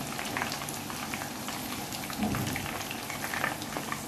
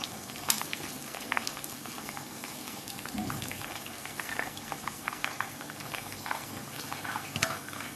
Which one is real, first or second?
first